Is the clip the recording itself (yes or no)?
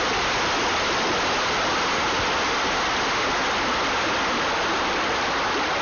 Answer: yes